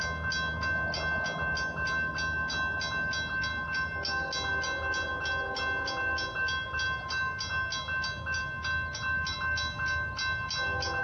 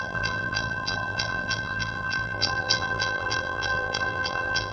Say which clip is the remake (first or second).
second